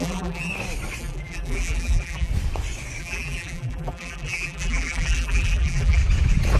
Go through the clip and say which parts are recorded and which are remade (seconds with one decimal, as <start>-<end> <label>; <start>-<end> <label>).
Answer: 0.0-0.5 remade; 0.5-1.0 recorded; 1.0-2.3 remade; 2.3-3.0 recorded; 3.0-6.0 remade; 6.0-6.6 recorded